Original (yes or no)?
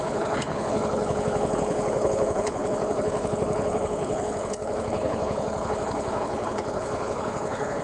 no